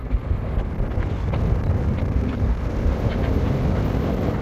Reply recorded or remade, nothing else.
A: recorded